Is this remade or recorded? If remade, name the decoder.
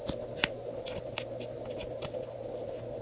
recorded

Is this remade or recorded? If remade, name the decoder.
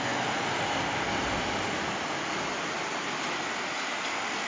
recorded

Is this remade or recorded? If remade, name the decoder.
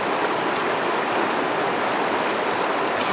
recorded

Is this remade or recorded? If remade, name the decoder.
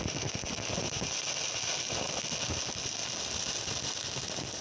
recorded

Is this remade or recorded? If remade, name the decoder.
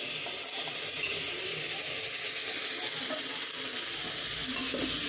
recorded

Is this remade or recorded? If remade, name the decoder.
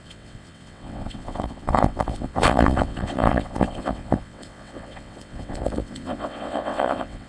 remade, vocoder, WaveNeXt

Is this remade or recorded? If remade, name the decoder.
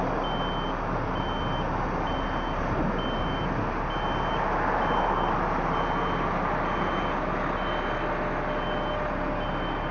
recorded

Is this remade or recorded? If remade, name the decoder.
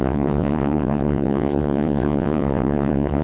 remade, vocoder, WaveNeXt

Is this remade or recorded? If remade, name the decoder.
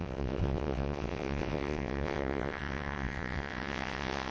remade, vocoder, WaveNeXt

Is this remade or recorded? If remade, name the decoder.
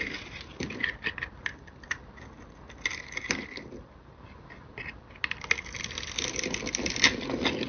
recorded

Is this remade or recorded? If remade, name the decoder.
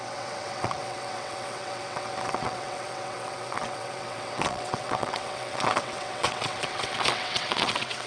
remade, vocoder, WaveNeXt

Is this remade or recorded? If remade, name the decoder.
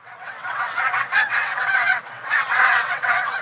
remade, vocoder, WaveNeXt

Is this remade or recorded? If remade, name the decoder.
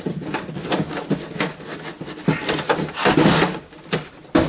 recorded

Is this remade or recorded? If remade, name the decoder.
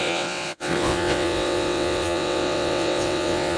remade, vocoder, WaveNeXt